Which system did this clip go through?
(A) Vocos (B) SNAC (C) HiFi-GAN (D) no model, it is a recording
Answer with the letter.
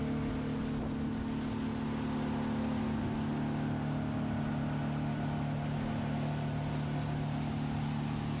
D